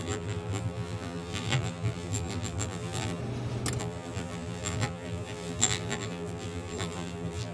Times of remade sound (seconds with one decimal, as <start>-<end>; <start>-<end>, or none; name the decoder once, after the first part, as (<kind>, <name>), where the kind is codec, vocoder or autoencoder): 0.0-3.2 (vocoder, BigVGAN v2); 3.8-7.5